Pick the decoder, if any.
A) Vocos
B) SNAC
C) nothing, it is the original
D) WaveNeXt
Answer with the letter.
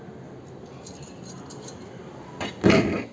C